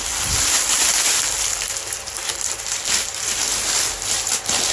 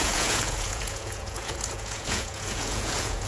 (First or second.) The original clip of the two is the first